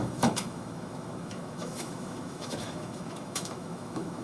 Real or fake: fake